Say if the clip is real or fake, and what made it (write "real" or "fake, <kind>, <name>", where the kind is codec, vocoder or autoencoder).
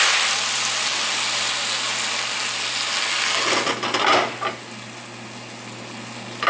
real